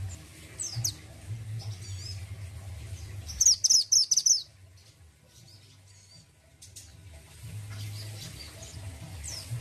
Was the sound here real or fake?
real